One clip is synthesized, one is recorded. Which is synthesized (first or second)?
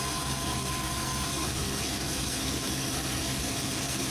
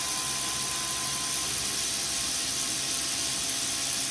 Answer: first